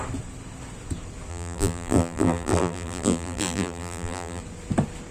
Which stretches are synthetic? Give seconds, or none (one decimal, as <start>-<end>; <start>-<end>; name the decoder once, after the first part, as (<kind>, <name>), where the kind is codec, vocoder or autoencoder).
1.3-4.4 (vocoder, BigVGAN v2)